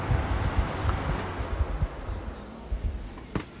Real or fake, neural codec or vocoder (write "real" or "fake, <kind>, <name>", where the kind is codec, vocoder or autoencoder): real